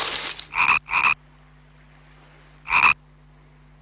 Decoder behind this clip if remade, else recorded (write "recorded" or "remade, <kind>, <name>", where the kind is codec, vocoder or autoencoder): recorded